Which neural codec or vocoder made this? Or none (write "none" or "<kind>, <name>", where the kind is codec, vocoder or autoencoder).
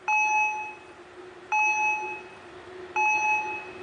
none